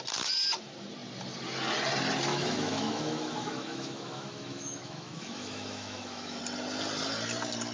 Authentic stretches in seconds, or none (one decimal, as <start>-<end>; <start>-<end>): 0.0-2.3; 6.4-7.7